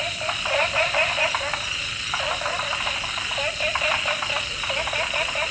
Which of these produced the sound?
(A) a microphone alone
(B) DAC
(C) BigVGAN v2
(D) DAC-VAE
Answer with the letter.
A